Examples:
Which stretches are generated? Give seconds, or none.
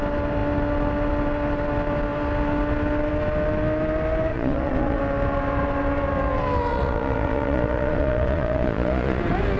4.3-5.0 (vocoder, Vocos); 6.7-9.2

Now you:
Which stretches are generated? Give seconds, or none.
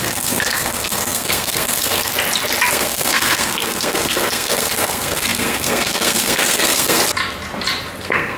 0.0-2.1 (codec, SNAC); 2.7-7.0; 8.0-8.4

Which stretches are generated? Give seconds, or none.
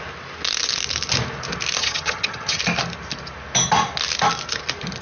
1.8-2.6 (vocoder, HiFi-GAN)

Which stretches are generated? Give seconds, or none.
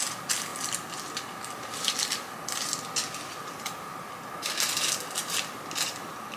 none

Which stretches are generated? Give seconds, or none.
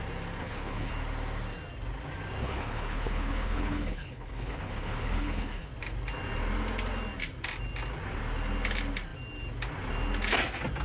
0.4-0.9 (codec, HILCodec); 2.4-5.7